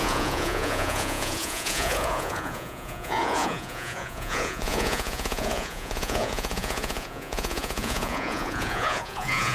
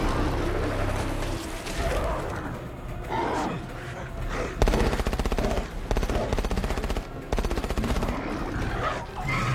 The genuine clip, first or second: second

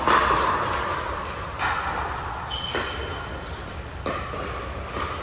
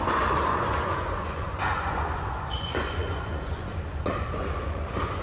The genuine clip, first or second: first